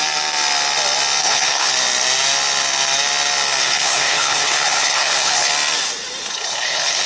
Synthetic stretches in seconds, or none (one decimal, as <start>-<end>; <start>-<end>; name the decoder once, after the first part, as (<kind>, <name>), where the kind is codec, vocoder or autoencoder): 1.2-1.7 (codec, HILCodec); 3.6-5.5; 6.3-7.1